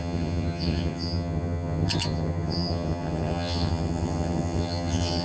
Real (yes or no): no